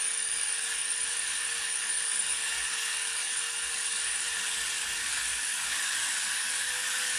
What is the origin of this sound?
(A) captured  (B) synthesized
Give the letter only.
B